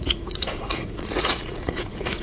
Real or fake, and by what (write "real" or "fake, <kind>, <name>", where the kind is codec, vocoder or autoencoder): fake, vocoder, Vocos